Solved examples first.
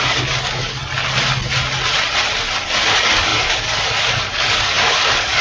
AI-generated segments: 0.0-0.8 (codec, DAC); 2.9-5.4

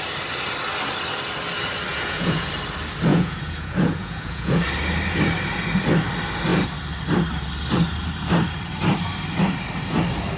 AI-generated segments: 1.9-2.5 (vocoder, Vocos); 3.1-4.6

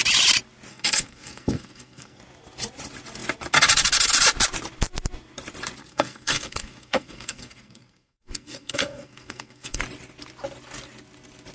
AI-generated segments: 0.7-2.2 (codec, SNAC); 5.8-9.8

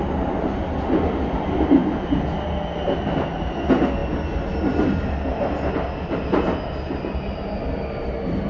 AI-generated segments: none

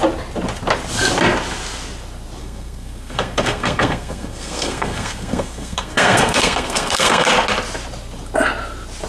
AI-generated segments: 2.4-7.3 (codec, SNAC)

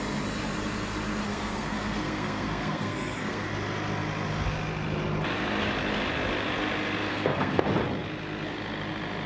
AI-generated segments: 1.3-3.5 (codec, SNAC); 7.1-7.6